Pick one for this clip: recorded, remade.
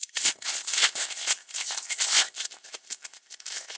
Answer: remade